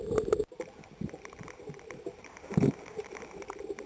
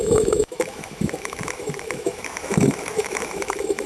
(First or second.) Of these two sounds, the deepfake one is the second